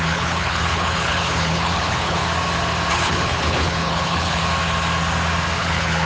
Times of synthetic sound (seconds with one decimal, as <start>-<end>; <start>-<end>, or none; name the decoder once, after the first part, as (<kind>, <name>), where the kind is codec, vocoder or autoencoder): 0.0-2.2 (codec, HILCodec); 2.9-4.4; 5.6-6.1